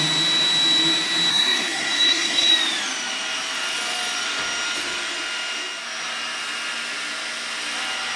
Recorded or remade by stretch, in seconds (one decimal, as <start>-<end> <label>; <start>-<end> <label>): 0.0-1.3 recorded; 1.3-2.5 remade; 2.5-8.2 recorded